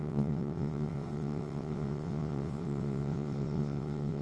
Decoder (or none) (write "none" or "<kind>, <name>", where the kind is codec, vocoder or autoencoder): vocoder, WaveNeXt